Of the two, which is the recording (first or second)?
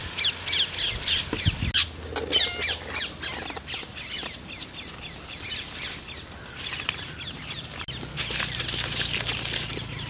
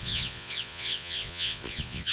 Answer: first